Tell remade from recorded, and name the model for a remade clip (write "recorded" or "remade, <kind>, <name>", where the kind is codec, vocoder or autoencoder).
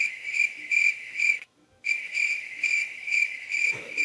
remade, autoencoder, DAC-VAE